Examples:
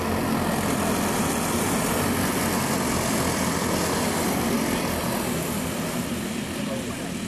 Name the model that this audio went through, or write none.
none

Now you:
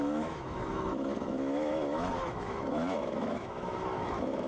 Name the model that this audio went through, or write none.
autoencoder, DAC-VAE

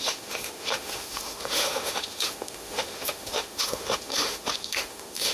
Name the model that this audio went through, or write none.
autoencoder, DAC-VAE